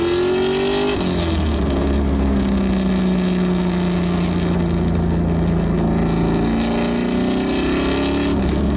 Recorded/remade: recorded